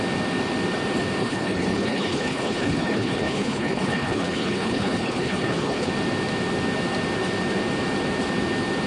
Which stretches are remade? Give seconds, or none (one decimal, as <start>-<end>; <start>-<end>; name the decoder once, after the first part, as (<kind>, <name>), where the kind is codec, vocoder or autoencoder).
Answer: 1.2-5.9 (codec, HILCodec)

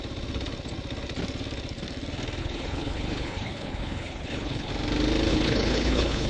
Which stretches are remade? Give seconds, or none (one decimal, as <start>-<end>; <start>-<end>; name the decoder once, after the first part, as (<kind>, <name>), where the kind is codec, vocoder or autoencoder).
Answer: 2.4-4.7 (codec, HILCodec); 5.3-6.3

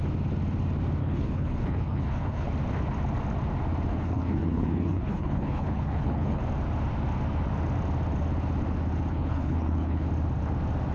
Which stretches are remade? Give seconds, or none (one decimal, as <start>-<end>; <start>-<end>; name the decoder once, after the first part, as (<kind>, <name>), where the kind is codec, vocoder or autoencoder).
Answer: 1.0-2.5 (codec, HILCodec); 3.9-6.4; 9.1-10.1

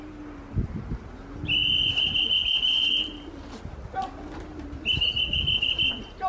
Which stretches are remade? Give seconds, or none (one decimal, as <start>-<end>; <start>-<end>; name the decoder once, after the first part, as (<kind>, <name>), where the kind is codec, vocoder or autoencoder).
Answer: none